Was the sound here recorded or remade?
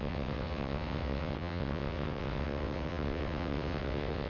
remade